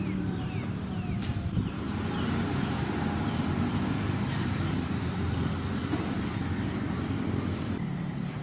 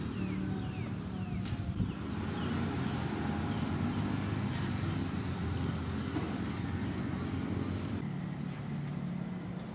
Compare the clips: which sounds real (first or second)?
second